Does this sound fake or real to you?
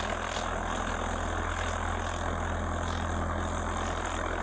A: real